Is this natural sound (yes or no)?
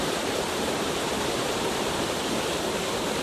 no